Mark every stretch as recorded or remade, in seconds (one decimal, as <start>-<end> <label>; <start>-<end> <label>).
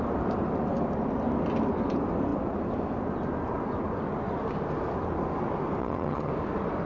0.0-5.8 recorded; 5.8-6.3 remade; 6.3-6.9 recorded